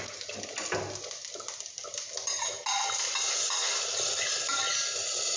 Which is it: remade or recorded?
recorded